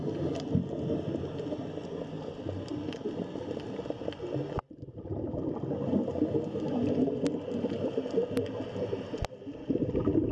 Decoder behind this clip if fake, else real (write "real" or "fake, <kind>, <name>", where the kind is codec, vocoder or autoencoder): real